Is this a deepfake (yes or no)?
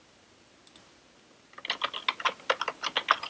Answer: no